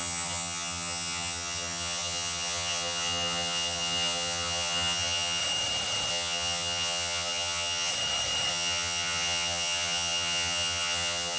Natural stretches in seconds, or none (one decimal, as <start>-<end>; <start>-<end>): 5.4-6.1; 7.9-8.5